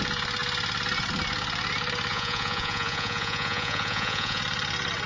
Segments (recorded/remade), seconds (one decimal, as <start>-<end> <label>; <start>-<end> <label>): 0.0-2.1 recorded; 2.1-4.4 remade; 4.4-5.1 recorded